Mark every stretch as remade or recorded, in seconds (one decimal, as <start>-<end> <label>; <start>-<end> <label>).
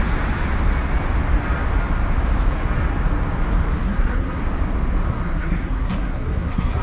0.0-3.8 recorded; 3.8-4.4 remade; 4.4-5.1 recorded; 5.1-6.8 remade